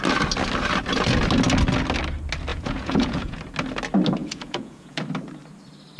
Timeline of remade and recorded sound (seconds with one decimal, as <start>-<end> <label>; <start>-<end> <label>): 0.0-2.5 recorded; 2.5-3.4 remade; 3.4-4.2 recorded; 4.2-5.0 remade; 5.0-6.0 recorded